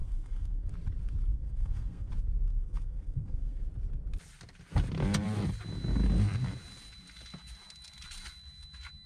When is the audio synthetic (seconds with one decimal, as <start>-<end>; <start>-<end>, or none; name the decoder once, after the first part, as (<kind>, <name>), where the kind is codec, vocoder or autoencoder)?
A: 0.0-0.7 (codec, SNAC); 1.3-2.1; 2.5-3.6